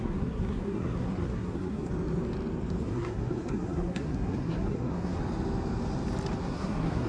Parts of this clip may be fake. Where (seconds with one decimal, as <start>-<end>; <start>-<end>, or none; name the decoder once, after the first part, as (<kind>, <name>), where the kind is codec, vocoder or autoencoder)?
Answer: 0.0-1.9 (codec, SNAC); 2.8-5.2; 6.4-7.1